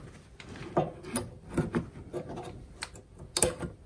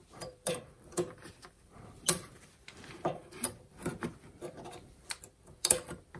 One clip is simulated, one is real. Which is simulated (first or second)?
second